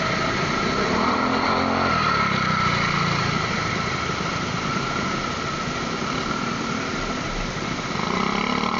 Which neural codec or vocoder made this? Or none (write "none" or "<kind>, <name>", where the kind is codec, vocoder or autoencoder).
none